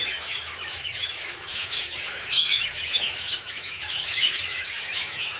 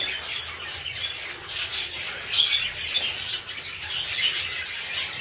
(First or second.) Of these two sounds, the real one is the second